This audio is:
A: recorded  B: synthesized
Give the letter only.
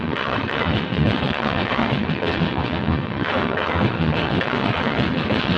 B